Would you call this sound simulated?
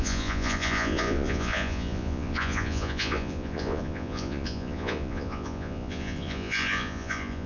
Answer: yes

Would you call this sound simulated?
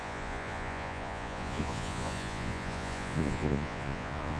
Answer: yes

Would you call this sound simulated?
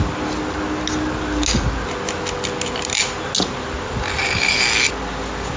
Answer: no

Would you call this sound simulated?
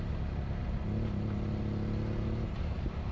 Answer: no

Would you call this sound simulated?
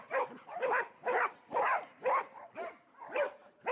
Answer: no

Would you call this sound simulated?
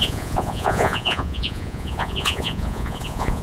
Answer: yes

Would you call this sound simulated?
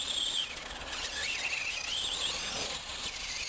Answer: yes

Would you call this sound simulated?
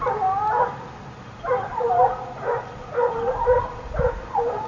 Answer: no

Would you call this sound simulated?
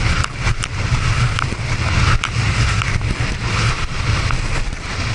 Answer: no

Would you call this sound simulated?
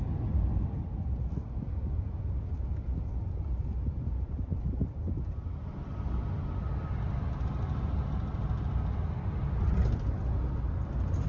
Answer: no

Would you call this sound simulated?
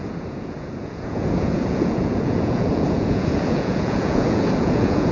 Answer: yes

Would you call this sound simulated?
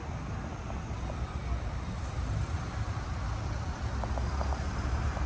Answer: no